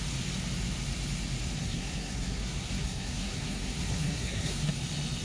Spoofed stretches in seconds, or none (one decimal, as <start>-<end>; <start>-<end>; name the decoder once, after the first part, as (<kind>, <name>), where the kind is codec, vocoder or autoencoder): 1.6-4.7 (codec, SNAC)